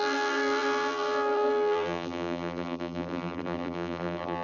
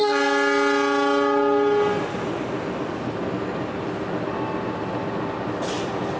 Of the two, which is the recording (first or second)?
second